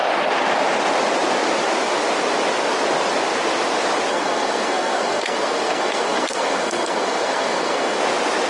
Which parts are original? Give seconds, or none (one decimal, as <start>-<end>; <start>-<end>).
0.0-4.1; 8.0-8.5